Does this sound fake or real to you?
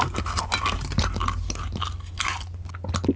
real